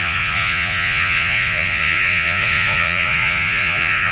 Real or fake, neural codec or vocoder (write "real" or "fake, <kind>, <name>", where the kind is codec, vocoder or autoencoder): fake, vocoder, Vocos